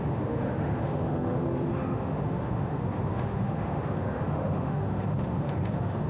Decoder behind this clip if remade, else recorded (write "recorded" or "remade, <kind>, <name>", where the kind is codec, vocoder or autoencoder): remade, autoencoder, DAC-VAE